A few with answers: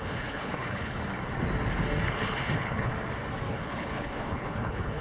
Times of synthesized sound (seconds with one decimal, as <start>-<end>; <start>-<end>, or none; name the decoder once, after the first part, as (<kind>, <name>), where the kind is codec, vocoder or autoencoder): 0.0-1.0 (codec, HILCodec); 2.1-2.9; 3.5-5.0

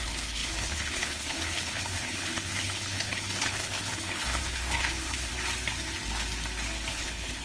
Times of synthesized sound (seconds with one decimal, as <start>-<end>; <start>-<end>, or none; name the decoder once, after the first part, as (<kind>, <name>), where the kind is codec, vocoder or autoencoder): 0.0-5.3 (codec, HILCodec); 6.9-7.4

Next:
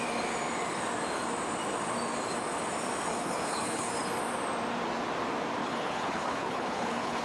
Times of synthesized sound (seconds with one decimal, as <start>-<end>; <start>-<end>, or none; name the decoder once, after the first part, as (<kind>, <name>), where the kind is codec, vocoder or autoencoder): 3.1-3.9 (codec, HILCodec); 5.6-7.2

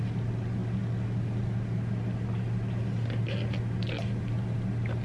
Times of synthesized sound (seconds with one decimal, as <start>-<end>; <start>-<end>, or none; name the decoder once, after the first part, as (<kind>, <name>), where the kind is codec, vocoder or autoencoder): none

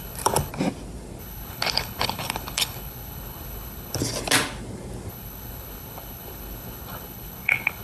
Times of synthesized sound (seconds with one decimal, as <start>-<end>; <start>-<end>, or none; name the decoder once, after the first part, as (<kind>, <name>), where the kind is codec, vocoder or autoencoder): 0.0-0.5 (codec, HILCodec); 1.2-4.0; 5.1-7.8

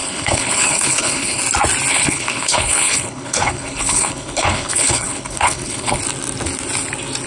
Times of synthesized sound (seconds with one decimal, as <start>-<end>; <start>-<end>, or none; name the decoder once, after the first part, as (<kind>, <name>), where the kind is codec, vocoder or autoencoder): 0.0-1.4 (codec, HILCodec); 1.9-6.0

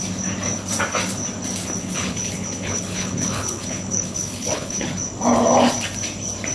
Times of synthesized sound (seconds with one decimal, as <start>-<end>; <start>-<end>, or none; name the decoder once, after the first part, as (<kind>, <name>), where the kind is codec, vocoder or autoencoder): 1.8-5.0 (codec, HILCodec)

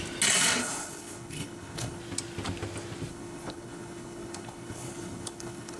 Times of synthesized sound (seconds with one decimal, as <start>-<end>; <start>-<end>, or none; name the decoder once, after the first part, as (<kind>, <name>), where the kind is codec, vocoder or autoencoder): 0.6-2.0 (codec, HILCodec); 3.1-5.8